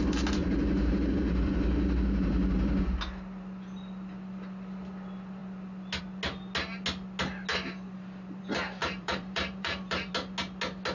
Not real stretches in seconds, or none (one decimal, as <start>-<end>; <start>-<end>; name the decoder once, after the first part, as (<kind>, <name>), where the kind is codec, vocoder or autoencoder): 0.4-2.8 (vocoder, BigVGAN v2); 8.8-10.1

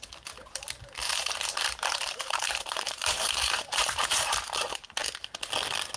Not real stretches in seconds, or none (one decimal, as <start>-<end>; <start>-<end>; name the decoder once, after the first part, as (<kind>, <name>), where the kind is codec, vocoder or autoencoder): 1.0-4.3 (vocoder, BigVGAN v2)

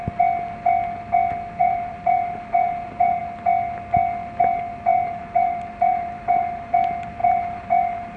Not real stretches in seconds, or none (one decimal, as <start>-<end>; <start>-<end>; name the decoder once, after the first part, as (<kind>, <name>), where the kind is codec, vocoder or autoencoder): 1.6-3.2 (vocoder, BigVGAN v2); 4.9-6.7; 7.2-8.2

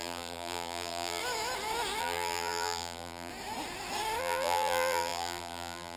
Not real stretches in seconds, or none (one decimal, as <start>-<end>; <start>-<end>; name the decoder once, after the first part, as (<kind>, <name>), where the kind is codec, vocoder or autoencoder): 0.0-1.2 (vocoder, BigVGAN v2); 2.0-3.3; 4.2-6.0

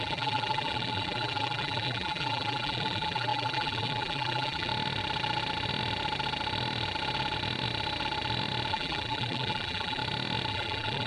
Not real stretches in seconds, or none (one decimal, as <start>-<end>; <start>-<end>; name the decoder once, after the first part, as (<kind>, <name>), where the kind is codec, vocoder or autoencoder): 0.0-4.7 (vocoder, BigVGAN v2); 8.7-10.0; 10.5-11.1